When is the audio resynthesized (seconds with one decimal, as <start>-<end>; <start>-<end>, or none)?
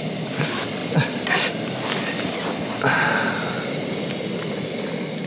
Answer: none